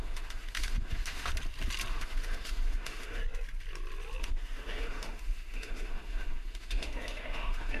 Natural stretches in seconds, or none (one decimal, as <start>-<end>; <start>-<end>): 1.3-1.9; 3.2-4.2